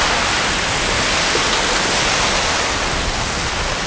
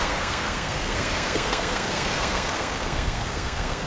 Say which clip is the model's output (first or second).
second